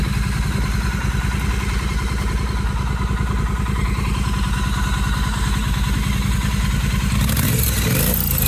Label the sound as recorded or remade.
recorded